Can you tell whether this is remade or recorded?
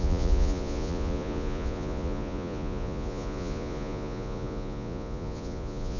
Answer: remade